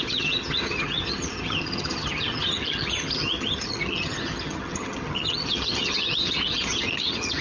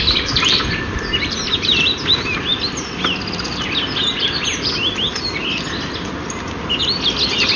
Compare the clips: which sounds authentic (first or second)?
second